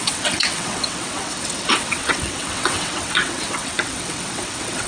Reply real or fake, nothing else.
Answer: fake